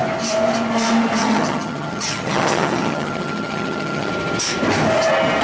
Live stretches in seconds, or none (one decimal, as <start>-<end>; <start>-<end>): 0.0-1.2; 4.1-5.4